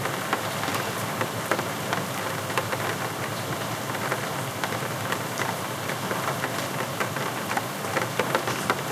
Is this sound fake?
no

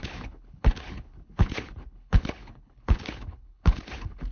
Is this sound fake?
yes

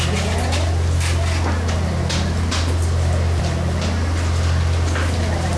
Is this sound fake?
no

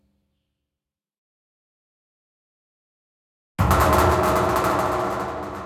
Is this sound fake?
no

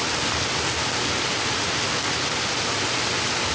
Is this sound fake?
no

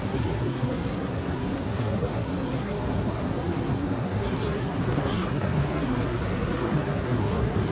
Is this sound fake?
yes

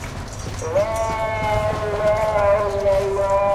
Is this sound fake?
no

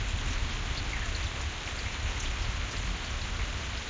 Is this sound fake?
no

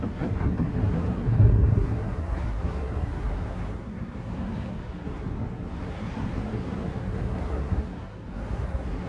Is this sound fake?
yes